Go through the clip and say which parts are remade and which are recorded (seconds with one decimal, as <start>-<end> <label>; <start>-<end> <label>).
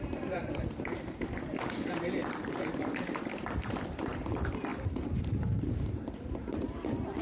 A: 0.0-7.2 remade